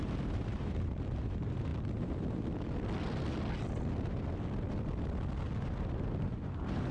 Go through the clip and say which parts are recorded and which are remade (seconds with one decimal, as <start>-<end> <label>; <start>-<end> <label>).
0.0-1.7 remade; 1.7-5.8 recorded; 5.8-6.9 remade